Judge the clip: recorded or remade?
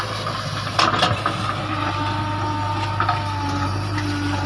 recorded